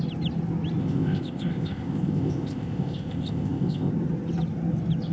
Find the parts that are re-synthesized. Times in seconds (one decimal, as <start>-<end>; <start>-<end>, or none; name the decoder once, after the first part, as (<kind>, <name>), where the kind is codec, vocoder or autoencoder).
0.8-3.9 (codec, ZipCodec)

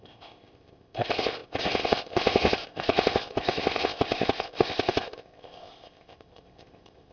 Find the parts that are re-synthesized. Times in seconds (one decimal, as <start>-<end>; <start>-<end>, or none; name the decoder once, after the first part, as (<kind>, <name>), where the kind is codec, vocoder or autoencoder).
0.0-7.1 (codec, ZipCodec)

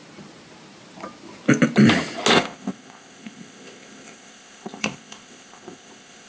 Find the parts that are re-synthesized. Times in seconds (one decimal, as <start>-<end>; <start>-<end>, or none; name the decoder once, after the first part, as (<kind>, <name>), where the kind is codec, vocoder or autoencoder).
2.3-6.3 (codec, ZipCodec)

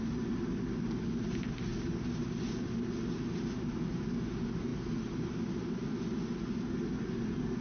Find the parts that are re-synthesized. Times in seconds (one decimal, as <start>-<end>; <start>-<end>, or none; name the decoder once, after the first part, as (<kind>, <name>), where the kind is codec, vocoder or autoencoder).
none

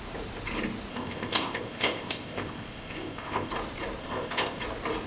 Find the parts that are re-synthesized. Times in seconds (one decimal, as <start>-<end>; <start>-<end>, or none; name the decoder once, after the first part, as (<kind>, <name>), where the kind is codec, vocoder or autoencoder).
0.9-3.5 (codec, ZipCodec); 4.0-4.6